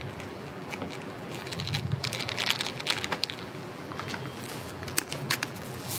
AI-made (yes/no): yes